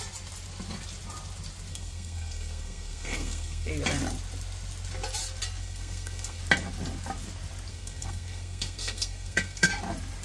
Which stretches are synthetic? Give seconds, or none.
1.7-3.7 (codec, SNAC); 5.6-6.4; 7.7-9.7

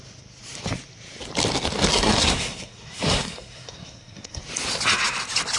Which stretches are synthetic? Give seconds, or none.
1.9-4.4 (codec, SNAC)

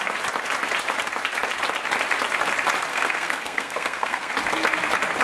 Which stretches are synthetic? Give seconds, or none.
2.9-4.3 (codec, SNAC)